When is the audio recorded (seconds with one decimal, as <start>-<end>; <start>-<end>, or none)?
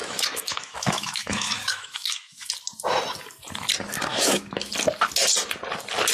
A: 2.5-4.1; 4.7-6.1